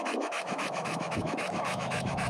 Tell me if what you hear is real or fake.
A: fake